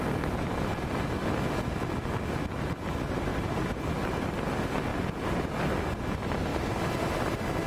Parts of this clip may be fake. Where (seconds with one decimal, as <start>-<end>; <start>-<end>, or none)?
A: 3.3-4.4